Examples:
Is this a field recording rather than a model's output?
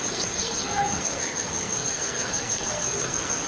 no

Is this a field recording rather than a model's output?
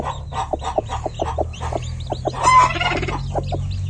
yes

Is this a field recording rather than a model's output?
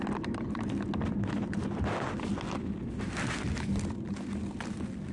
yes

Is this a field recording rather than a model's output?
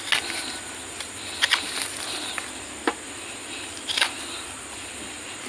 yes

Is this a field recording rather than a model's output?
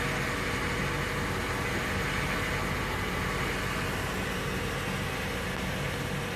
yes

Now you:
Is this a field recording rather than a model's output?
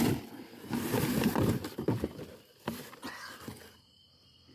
yes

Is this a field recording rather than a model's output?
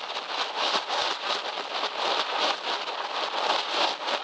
yes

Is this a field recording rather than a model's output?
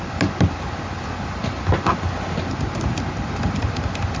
yes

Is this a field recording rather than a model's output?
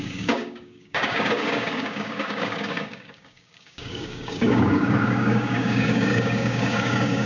no